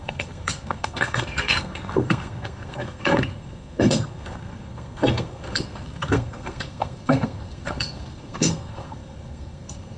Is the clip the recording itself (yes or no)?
no